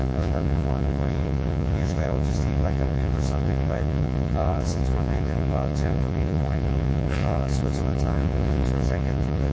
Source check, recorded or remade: remade